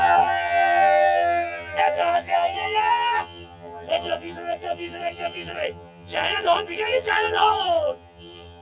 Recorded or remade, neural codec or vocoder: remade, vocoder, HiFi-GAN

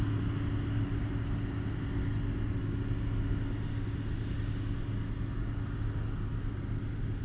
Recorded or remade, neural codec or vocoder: recorded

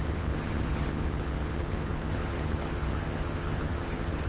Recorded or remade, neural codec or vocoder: remade, vocoder, HiFi-GAN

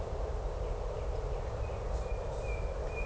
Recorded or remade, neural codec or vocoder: recorded